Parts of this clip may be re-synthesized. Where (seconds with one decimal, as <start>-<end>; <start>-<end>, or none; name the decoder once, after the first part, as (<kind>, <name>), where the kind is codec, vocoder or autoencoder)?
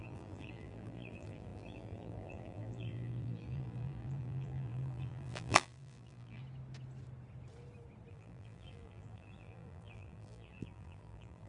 0.0-6.4 (vocoder, BigVGAN v2); 8.1-11.5